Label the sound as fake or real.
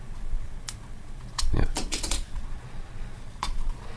fake